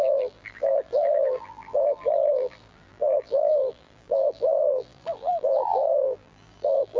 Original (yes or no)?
no